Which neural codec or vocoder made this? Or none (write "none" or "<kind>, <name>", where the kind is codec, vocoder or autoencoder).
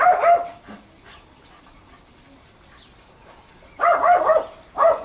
none